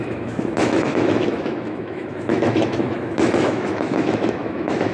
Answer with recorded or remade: remade